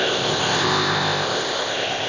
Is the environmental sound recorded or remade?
remade